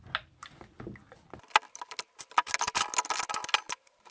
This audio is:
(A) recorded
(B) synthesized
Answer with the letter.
A